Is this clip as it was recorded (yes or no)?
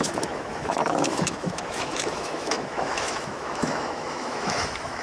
no